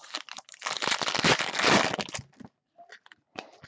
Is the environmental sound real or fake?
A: real